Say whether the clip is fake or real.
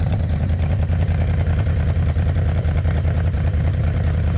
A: fake